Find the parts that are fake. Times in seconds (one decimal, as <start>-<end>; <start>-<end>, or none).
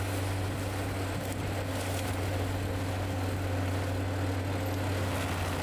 none